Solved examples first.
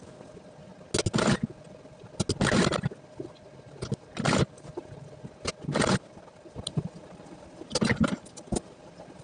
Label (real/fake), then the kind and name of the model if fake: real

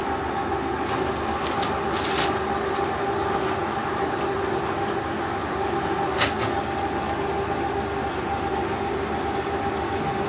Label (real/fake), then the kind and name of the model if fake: real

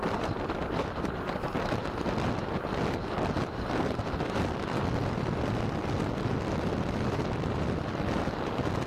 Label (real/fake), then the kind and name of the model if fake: real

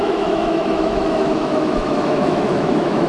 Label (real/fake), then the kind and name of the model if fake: fake, autoencoder, DAC-VAE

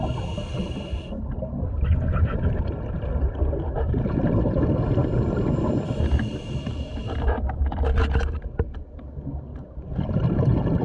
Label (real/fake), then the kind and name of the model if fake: real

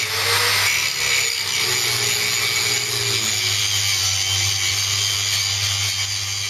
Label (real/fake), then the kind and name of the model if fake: real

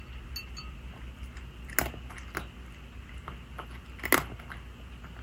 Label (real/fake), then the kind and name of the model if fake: real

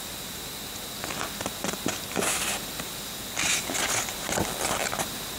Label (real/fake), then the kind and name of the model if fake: real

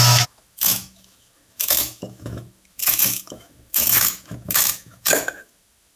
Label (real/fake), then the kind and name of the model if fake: fake, autoencoder, DAC-VAE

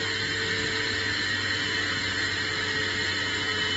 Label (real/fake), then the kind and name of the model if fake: real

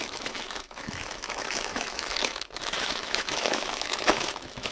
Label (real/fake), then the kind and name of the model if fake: fake, autoencoder, DAC-VAE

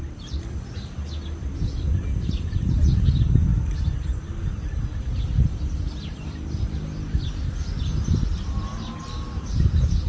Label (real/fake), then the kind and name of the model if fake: real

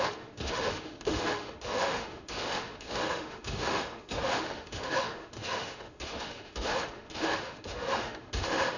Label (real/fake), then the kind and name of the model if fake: fake, autoencoder, DAC-VAE